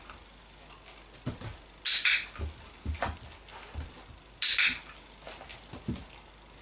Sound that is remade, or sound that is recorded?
recorded